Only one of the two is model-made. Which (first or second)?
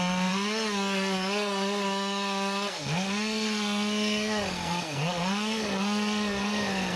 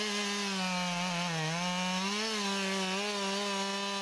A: first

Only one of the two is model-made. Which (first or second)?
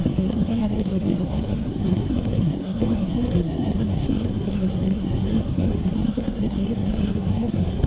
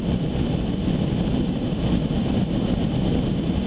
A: first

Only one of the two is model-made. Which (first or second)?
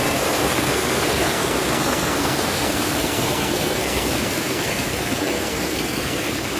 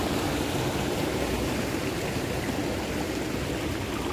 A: first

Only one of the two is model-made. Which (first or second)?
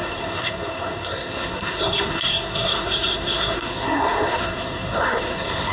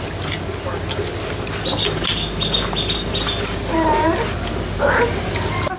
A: first